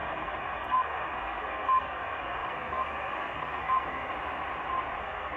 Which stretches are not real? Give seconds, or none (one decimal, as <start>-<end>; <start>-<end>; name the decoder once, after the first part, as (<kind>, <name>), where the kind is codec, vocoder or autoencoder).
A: 0.0-4.1 (codec, SNAC); 5.0-5.4